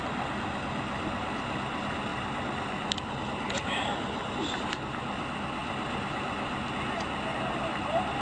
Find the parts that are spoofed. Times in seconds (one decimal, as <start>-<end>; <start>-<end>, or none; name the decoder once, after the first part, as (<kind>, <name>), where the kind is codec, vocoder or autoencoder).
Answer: 2.1-4.7 (vocoder, BigVGAN v2)